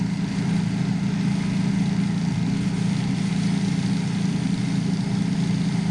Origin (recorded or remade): recorded